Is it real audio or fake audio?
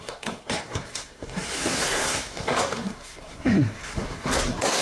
fake